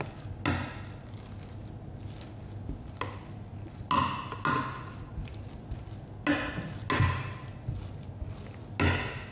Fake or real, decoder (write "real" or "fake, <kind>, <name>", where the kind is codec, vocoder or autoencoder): real